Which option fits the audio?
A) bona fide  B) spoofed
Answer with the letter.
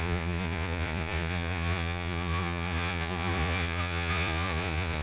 B